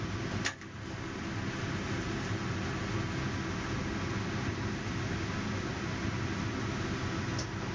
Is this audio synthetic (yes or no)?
no